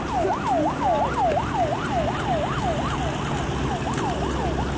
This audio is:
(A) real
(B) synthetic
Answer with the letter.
A